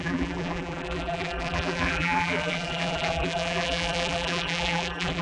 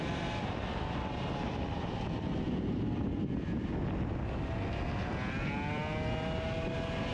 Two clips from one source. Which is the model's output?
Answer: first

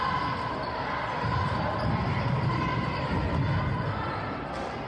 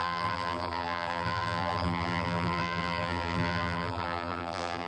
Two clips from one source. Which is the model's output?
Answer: second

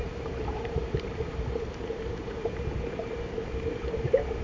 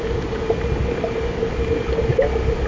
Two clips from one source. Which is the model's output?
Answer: first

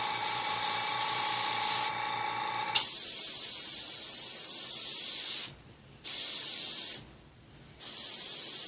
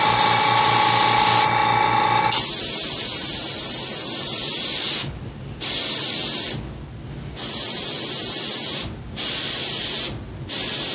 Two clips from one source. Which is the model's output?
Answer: first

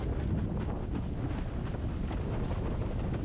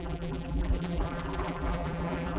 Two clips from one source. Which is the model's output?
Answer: second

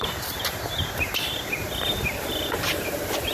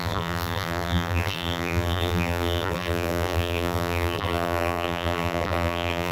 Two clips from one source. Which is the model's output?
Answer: second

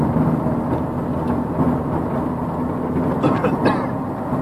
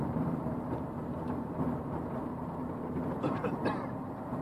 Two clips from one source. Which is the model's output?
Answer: second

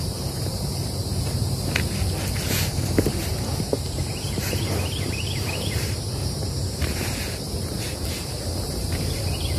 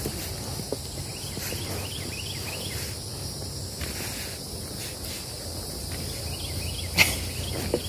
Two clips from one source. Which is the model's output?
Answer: first